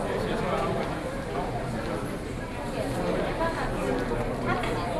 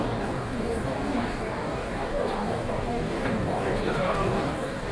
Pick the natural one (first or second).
first